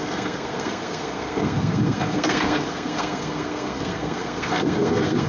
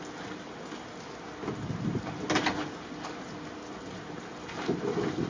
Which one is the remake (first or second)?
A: first